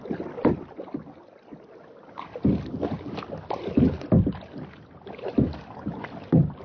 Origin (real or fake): real